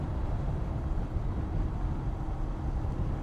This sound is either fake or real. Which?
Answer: real